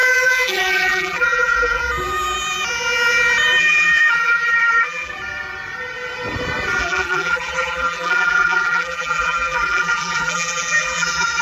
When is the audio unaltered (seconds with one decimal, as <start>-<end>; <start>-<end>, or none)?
1.8-3.6; 5.1-6.8